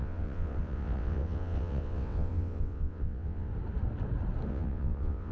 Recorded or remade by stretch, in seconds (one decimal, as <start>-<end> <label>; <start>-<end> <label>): 0.0-3.5 remade; 3.5-4.5 recorded; 4.5-5.3 remade